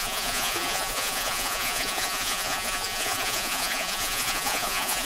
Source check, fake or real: fake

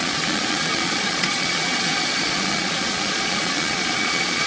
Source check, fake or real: fake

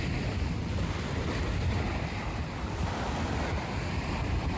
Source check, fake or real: real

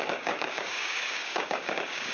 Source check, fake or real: fake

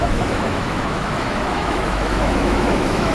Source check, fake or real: fake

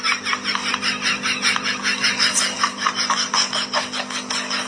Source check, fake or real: real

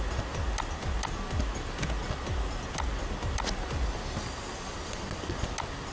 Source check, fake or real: real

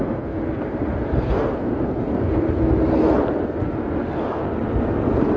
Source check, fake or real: real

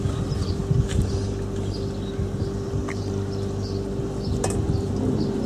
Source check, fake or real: real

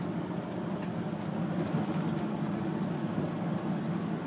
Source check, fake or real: real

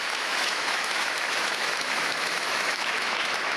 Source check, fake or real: fake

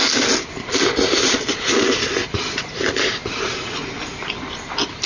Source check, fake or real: real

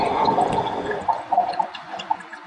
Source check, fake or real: fake